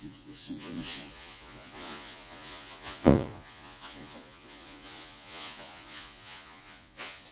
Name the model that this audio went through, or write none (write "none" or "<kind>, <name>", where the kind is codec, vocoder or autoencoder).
vocoder, Vocos